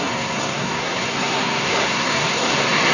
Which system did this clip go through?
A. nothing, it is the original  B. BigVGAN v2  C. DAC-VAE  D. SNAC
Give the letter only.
D